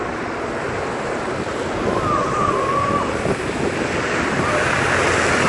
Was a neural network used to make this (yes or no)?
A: no